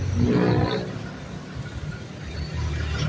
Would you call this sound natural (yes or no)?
yes